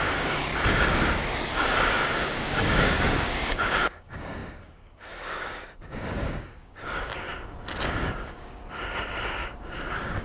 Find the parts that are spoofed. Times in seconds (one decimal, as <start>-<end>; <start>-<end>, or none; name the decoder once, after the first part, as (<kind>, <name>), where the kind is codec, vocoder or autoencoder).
0.0-0.5 (codec, DAC); 1.5-7.1; 7.9-8.6